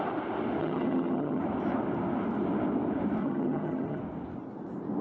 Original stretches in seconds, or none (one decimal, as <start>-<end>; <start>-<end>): 0.0-0.6; 1.4-3.2; 4.0-5.0